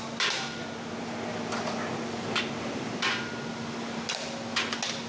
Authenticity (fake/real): real